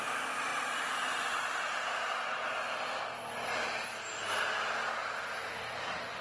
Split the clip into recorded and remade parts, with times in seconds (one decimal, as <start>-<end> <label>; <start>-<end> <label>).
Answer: 0.0-6.2 recorded